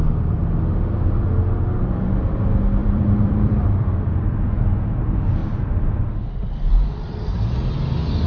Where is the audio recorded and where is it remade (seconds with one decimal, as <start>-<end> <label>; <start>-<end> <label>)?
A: 0.0-2.8 recorded; 2.8-4.2 remade; 4.2-5.4 recorded; 5.4-7.7 remade; 7.7-8.3 recorded